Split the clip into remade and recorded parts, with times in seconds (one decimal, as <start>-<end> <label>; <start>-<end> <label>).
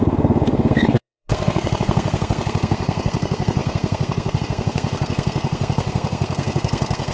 0.0-7.1 remade